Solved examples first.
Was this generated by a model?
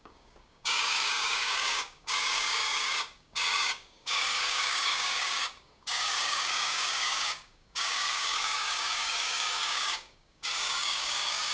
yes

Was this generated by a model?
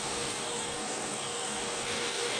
yes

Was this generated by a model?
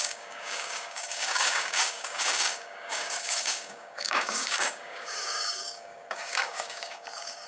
yes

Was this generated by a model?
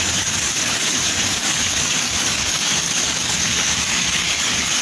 yes